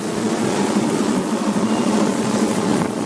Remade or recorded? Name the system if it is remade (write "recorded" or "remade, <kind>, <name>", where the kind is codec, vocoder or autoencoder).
remade, vocoder, Vocos